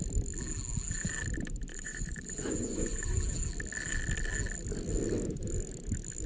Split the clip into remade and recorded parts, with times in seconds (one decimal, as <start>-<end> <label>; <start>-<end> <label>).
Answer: 0.0-1.7 recorded; 1.7-3.2 remade; 3.2-6.3 recorded